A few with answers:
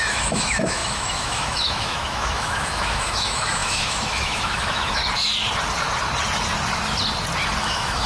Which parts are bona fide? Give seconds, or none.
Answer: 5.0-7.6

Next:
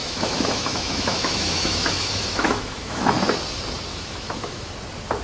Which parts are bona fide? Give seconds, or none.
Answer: 3.1-3.9; 4.7-5.2

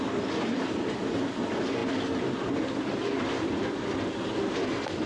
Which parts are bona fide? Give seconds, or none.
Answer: 0.0-5.1